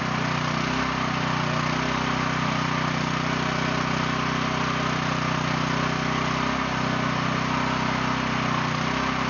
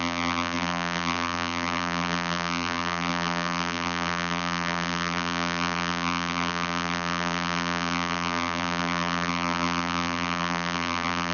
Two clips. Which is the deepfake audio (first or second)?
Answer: second